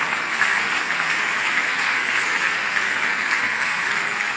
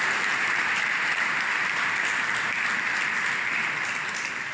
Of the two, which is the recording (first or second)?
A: second